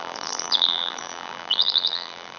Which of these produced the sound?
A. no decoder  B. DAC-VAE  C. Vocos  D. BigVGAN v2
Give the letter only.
D